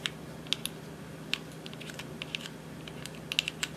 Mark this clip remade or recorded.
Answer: recorded